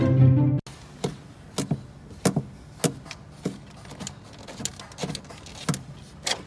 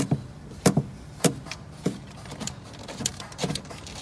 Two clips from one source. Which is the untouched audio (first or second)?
first